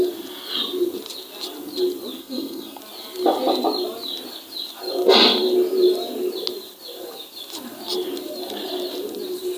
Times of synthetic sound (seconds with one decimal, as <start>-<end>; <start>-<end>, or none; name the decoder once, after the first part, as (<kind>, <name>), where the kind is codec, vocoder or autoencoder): 2.2-2.8 (codec, SNAC)